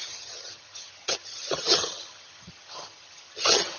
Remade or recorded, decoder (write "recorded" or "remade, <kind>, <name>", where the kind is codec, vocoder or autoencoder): remade, vocoder, HiFi-GAN